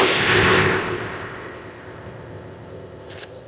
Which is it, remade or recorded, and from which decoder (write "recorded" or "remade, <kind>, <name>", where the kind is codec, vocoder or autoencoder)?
remade, codec, ZipCodec